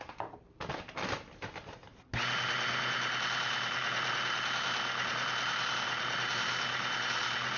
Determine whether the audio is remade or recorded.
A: recorded